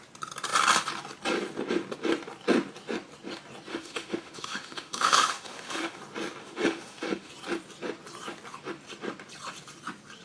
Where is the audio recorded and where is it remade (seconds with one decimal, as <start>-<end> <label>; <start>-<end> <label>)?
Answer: 0.0-3.7 recorded; 3.7-6.0 remade; 6.0-6.4 recorded; 6.4-7.3 remade; 7.3-10.2 recorded